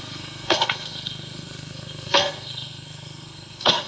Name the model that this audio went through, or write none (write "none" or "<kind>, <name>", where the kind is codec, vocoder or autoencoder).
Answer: codec, SNAC